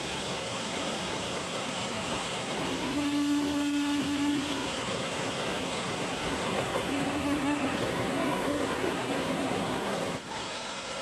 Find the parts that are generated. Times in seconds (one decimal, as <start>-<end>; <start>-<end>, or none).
0.0-11.0